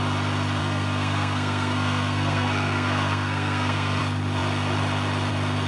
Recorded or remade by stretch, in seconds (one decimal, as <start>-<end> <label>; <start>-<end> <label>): 0.0-0.6 recorded; 0.6-4.0 remade; 4.0-5.7 recorded